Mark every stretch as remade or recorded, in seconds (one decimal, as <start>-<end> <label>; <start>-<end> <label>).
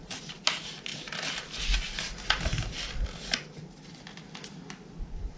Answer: 0.0-5.4 recorded